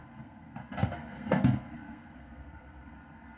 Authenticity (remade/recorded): remade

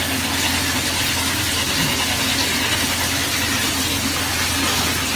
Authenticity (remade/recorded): recorded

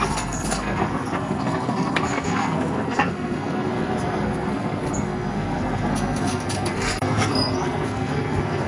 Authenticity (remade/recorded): remade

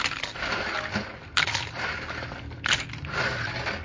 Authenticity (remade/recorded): recorded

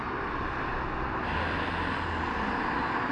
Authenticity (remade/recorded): recorded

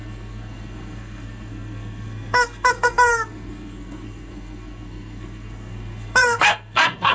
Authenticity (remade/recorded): remade